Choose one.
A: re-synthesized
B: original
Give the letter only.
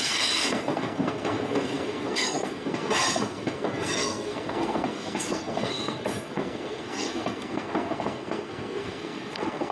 A